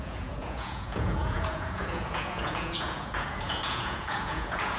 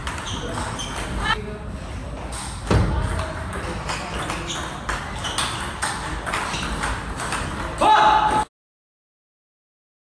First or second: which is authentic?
second